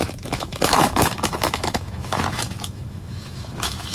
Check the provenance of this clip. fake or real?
fake